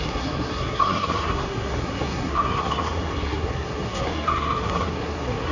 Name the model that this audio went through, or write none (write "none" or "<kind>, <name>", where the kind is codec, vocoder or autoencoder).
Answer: codec, SNAC